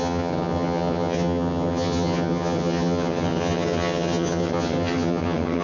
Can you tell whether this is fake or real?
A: fake